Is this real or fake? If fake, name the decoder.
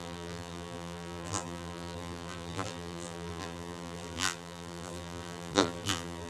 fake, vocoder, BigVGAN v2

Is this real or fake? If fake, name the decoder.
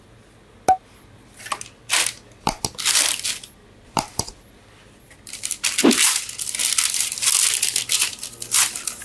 real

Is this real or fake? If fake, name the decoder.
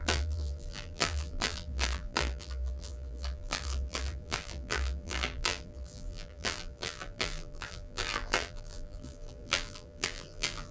fake, vocoder, BigVGAN v2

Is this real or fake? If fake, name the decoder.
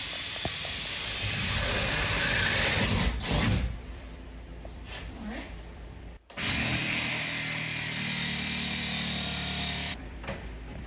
fake, vocoder, BigVGAN v2